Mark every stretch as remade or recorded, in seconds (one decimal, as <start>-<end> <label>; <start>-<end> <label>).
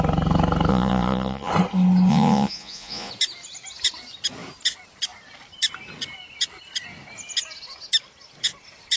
0.0-0.7 recorded; 0.7-1.5 remade; 1.5-2.1 recorded; 2.1-3.1 remade; 3.1-9.0 recorded